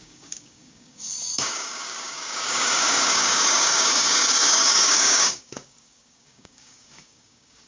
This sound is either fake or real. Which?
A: fake